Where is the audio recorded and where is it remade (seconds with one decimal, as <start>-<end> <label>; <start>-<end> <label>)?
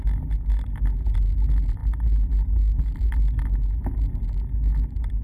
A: 0.0-1.8 recorded; 1.8-3.0 remade; 3.0-5.2 recorded